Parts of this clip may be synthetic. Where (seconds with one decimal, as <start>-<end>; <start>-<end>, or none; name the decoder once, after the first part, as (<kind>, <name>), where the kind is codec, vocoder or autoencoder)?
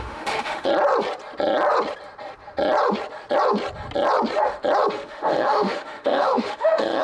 0.0-0.7 (autoencoder, DAC-VAE); 4.9-7.0